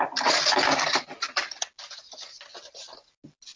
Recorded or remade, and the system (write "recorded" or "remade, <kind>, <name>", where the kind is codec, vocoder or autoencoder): recorded